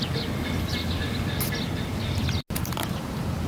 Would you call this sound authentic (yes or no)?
yes